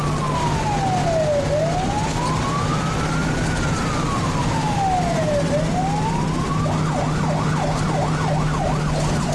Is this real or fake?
real